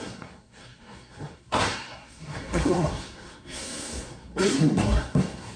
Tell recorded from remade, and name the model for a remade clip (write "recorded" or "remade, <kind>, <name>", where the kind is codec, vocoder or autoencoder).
remade, codec, SNAC